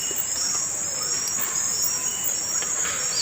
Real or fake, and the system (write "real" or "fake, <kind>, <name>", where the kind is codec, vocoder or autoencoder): real